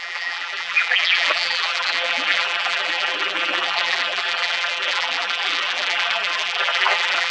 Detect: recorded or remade remade